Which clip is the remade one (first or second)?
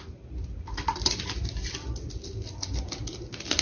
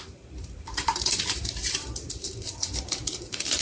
second